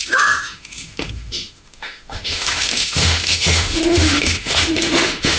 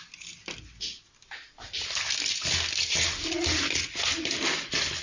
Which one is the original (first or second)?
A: second